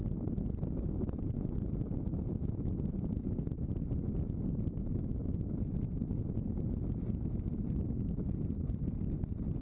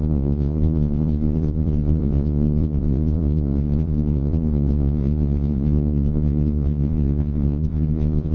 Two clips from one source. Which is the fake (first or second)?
second